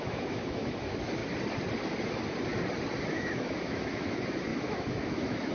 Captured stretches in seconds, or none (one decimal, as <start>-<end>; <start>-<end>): 1.2-3.0